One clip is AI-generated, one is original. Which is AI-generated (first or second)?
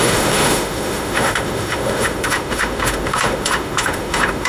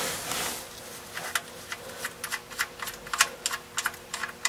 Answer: first